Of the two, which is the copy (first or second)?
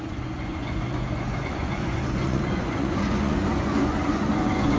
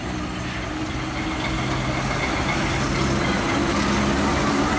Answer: first